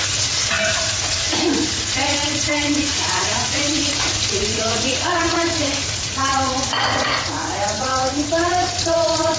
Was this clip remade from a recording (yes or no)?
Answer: yes